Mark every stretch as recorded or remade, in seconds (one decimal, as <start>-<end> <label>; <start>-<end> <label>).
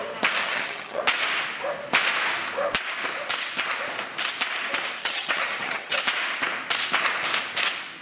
0.0-0.4 recorded; 0.4-1.0 remade; 1.0-5.0 recorded; 5.0-6.0 remade; 6.0-8.0 recorded